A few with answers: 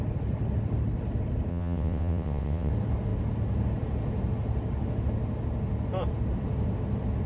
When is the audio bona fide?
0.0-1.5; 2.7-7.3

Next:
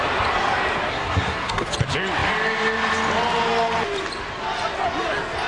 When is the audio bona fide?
0.0-0.9; 1.7-5.5

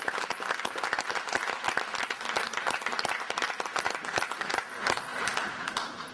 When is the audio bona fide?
0.0-6.1